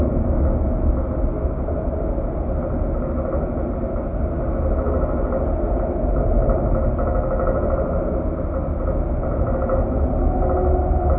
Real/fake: real